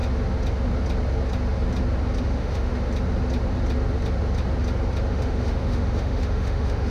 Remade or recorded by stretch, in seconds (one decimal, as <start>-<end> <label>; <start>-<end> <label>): 0.0-2.2 recorded; 2.2-2.7 remade; 2.7-5.1 recorded; 5.1-6.9 remade